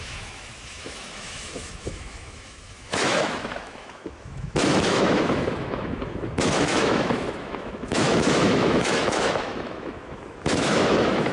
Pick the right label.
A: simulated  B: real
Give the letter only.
A